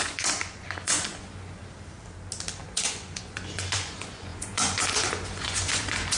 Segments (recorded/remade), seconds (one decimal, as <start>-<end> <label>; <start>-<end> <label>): 0.0-1.6 remade; 1.6-2.6 recorded; 2.6-6.2 remade